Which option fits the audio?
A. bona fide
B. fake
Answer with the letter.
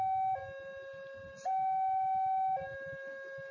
A